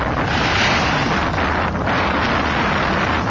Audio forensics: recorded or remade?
recorded